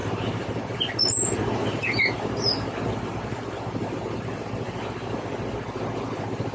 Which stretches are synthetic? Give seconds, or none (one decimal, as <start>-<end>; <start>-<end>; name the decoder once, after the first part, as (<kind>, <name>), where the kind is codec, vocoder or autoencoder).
none